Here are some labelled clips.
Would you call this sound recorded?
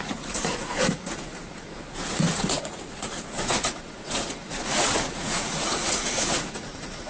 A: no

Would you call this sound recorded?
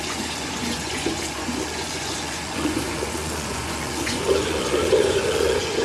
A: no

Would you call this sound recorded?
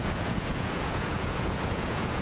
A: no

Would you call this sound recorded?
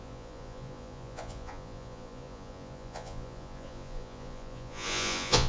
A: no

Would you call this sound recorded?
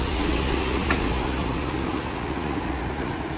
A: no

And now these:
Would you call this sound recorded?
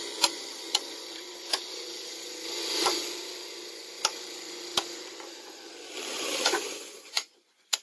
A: no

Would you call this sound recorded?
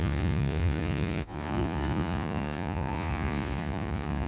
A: no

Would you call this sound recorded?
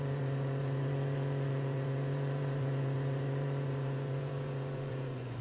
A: no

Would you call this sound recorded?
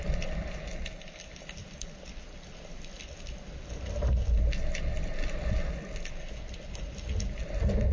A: yes